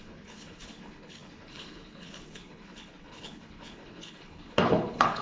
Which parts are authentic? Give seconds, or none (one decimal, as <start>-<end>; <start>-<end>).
none

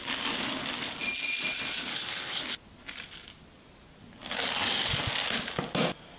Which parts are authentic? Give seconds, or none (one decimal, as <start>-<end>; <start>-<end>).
0.0-1.9; 2.4-6.2

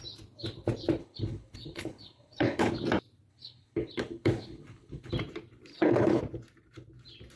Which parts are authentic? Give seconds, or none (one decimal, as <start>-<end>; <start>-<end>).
0.0-1.0; 2.7-3.3; 5.1-5.7; 6.2-7.4

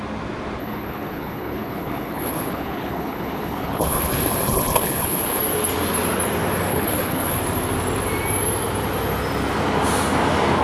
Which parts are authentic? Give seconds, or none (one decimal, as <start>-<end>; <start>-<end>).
0.0-0.6; 5.4-6.7; 7.4-10.6

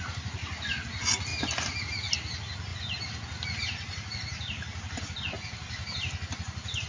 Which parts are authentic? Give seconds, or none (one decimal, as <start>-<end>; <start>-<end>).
0.0-6.9